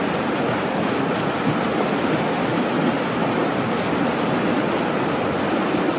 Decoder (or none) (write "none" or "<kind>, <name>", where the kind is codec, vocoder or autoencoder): none